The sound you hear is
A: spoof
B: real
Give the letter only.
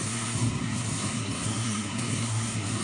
A